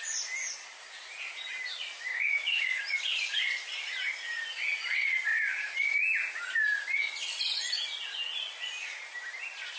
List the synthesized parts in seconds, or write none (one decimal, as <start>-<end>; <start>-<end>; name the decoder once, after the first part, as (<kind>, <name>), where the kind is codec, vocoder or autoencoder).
2.1-2.8 (autoencoder, DAC-VAE)

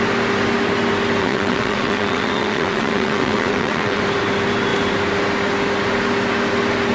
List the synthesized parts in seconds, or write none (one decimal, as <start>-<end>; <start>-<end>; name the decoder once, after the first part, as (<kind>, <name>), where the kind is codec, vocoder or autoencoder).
1.2-4.0 (vocoder, WaveNeXt)

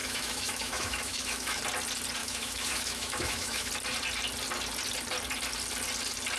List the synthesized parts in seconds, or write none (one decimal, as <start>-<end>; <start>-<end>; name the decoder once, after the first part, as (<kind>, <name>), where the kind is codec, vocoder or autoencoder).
0.0-1.6 (autoencoder, DAC-VAE); 2.2-3.7

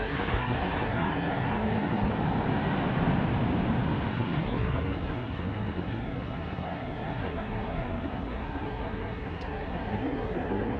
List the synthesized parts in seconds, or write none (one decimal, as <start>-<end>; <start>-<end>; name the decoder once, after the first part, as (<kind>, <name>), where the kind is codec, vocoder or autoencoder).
0.0-2.1 (codec, SNAC); 4.1-10.8